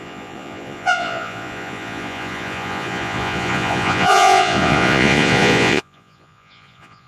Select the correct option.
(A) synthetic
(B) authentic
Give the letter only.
A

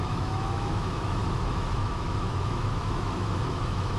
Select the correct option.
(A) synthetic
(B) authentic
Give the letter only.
A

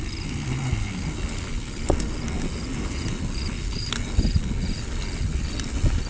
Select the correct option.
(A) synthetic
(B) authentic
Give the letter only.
B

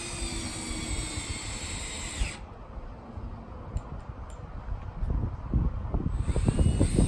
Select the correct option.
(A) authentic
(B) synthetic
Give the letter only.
A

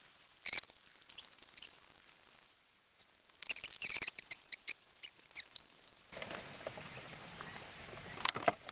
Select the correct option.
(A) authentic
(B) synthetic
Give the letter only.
B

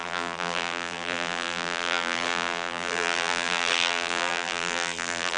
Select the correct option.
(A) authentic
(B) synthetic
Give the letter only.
B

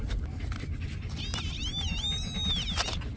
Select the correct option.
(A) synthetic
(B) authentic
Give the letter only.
B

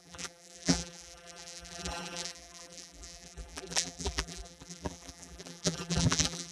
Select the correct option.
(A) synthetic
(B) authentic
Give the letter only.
A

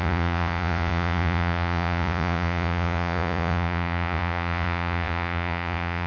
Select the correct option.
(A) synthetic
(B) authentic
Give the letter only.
A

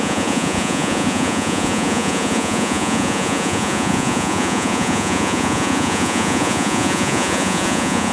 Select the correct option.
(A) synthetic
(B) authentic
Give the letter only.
A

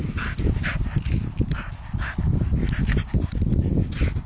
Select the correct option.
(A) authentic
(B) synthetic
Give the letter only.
A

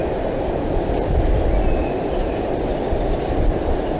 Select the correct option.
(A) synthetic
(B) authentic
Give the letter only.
B